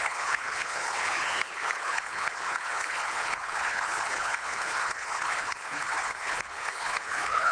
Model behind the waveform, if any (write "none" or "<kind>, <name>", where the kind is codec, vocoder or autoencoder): codec, HILCodec